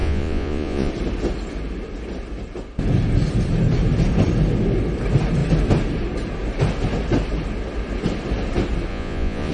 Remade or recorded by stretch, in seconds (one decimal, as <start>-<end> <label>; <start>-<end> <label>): 0.0-0.9 remade; 0.9-8.9 recorded; 8.9-9.5 remade